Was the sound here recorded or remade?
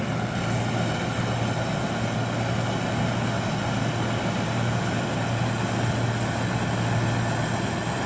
recorded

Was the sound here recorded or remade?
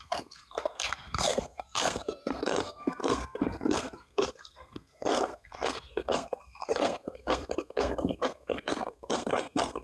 remade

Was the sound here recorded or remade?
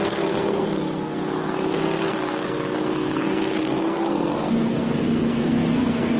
remade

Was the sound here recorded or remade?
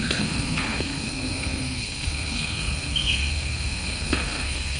remade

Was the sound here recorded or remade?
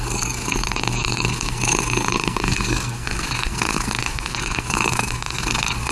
remade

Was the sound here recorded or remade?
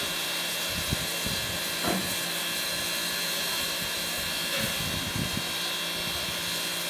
recorded